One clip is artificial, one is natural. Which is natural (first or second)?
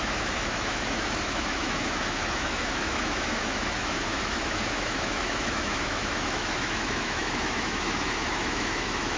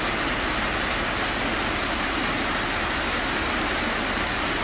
second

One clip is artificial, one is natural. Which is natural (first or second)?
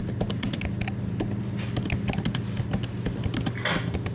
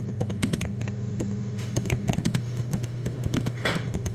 first